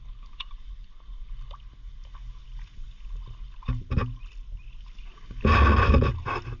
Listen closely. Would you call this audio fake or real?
real